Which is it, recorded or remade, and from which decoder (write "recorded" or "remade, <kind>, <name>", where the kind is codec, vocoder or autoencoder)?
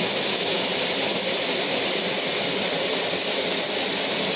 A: recorded